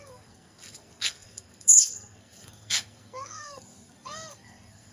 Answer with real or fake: fake